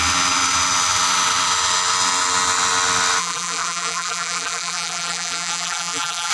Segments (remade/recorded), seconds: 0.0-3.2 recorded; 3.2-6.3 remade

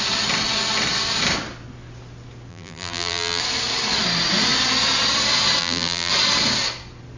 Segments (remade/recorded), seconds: 0.0-2.5 recorded; 2.5-3.4 remade; 3.4-5.6 recorded; 5.6-6.1 remade; 6.1-7.2 recorded